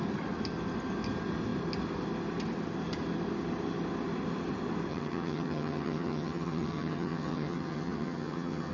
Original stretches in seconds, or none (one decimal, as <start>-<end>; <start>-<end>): 0.0-4.9